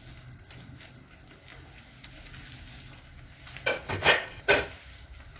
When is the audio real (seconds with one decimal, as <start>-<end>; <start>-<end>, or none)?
0.0-3.9; 4.4-5.4